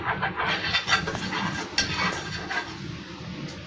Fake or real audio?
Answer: real